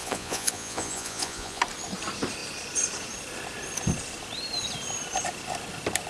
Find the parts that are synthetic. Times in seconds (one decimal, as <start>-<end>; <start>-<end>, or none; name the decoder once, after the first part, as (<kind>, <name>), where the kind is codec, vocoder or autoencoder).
0.0-1.6 (vocoder, Vocos)